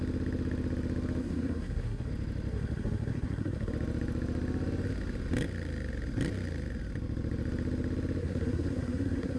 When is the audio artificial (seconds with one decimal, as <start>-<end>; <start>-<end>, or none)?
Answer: 1.2-2.1; 2.5-3.7; 8.2-9.4